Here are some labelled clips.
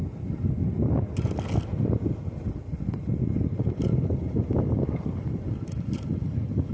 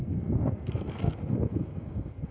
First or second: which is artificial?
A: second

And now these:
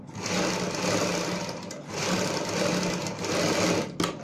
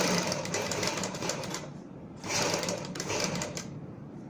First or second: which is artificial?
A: second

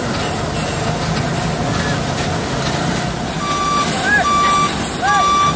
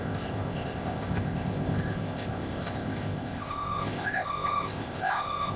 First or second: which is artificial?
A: second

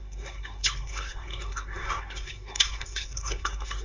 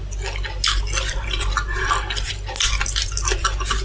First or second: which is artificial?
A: first